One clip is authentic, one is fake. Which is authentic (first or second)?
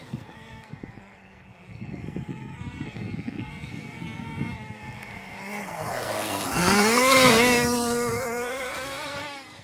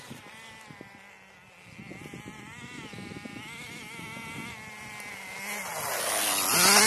second